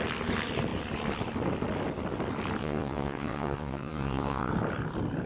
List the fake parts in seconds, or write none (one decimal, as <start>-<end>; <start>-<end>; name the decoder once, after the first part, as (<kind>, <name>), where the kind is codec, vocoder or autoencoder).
2.6-4.5 (vocoder, WaveNeXt)